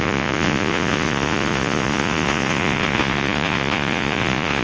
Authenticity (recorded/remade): remade